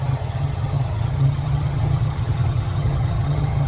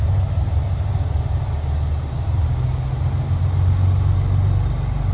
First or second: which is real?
second